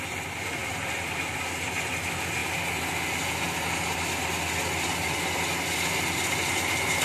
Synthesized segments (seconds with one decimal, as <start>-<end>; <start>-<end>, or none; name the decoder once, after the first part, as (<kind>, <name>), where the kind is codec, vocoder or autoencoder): 0.6-1.2 (vocoder, BigVGAN v2)